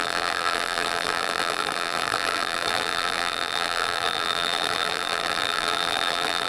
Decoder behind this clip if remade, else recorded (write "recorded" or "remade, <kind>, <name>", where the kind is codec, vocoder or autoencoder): remade, vocoder, BigVGAN v2